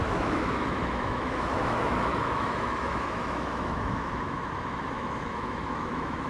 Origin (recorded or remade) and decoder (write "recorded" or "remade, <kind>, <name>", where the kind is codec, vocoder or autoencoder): remade, autoencoder, DAC-VAE